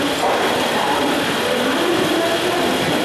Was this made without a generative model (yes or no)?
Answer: yes